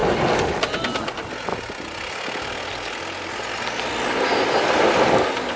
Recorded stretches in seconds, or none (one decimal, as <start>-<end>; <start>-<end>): 0.0-5.6